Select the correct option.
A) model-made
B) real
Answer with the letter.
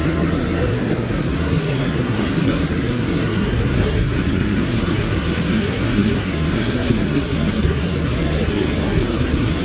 A